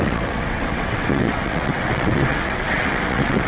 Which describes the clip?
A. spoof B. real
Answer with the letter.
A